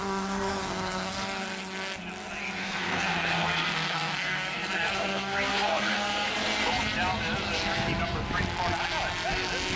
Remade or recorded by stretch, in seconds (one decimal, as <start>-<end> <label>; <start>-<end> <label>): 0.0-1.1 remade; 1.1-2.6 recorded; 2.6-6.3 remade; 6.3-9.8 recorded